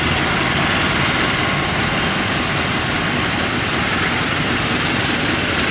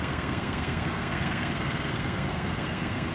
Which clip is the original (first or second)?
first